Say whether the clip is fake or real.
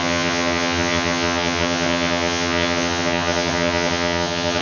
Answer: fake